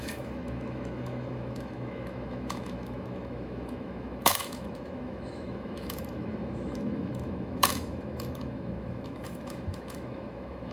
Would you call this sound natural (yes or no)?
no